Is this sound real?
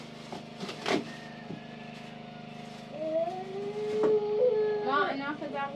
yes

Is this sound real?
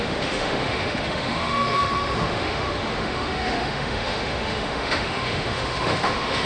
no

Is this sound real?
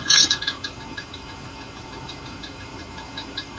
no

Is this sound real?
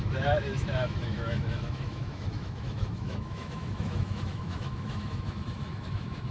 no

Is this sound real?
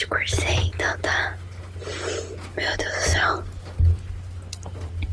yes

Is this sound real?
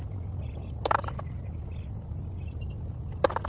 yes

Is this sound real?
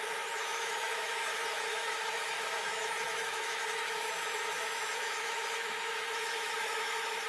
no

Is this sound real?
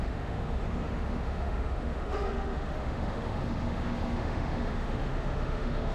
no